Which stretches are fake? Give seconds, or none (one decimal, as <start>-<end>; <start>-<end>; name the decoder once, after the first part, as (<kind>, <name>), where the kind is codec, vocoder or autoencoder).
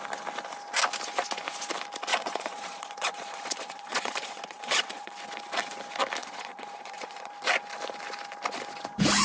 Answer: 2.1-5.1 (vocoder, Vocos); 6.2-7.3